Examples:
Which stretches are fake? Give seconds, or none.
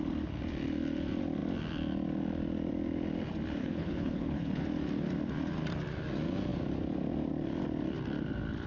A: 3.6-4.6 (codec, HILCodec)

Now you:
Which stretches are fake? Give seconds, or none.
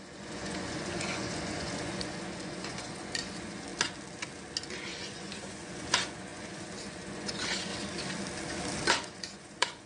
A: 0.0-3.7 (vocoder, Vocos); 4.8-7.7; 8.9-9.9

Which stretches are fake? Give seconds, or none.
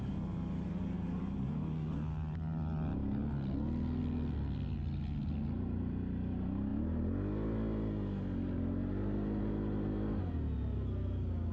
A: none